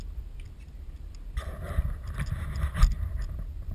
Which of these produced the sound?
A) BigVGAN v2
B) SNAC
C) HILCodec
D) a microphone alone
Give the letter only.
A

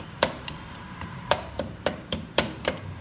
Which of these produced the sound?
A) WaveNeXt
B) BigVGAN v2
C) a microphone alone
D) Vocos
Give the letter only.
B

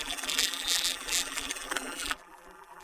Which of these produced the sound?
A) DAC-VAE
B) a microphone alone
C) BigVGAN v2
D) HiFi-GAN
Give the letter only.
C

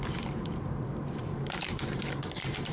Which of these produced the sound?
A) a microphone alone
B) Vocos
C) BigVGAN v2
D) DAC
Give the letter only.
C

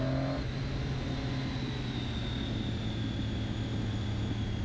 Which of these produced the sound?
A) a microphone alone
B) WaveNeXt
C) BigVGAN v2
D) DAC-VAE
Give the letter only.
A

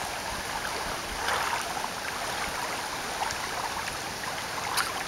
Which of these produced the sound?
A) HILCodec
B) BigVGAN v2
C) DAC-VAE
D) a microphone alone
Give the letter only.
D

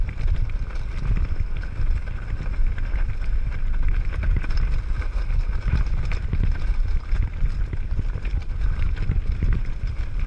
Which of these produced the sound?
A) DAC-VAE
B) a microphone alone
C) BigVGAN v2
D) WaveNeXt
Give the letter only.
B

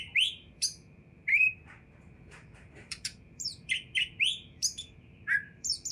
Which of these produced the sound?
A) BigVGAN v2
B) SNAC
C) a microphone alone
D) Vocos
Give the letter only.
A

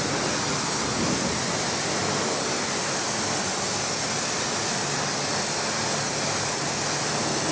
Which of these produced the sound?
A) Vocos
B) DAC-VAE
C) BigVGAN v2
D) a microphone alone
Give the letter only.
D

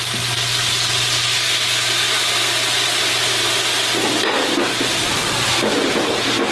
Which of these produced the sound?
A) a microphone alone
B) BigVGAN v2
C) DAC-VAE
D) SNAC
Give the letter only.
A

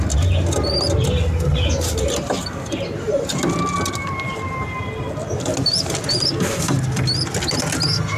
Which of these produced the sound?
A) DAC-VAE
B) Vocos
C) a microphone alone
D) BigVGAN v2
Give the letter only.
C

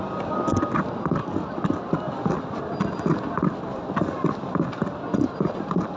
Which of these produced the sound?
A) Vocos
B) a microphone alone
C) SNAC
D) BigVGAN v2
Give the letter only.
B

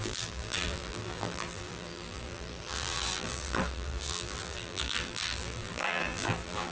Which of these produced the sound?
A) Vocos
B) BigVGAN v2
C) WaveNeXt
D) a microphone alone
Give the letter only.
B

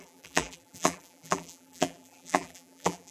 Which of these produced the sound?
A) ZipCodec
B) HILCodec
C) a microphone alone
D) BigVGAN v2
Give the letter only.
D